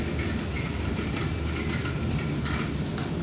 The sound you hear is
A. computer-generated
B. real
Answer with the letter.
B